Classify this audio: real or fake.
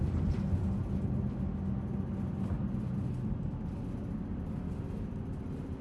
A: real